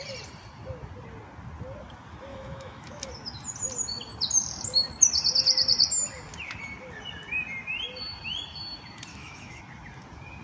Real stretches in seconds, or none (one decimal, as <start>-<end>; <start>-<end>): 0.0-2.3; 3.1-9.1; 9.6-10.4